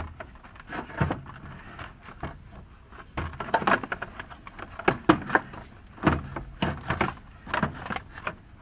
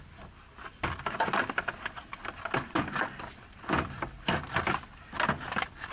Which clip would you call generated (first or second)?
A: second